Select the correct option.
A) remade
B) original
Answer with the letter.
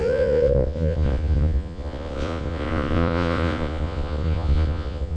A